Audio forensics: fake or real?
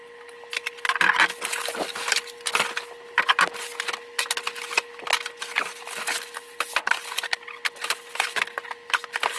real